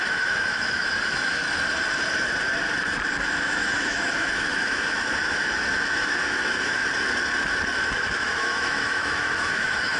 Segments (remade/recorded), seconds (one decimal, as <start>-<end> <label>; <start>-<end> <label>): 0.0-1.4 remade; 1.4-3.3 recorded; 3.3-6.8 remade; 6.8-7.9 recorded; 7.9-10.0 remade